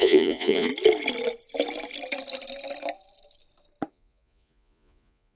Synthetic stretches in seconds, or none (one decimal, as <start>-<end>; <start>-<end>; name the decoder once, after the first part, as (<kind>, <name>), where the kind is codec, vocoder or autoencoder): 0.0-0.7 (vocoder, Vocos); 3.9-5.4